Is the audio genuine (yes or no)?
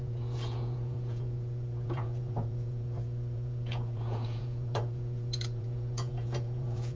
no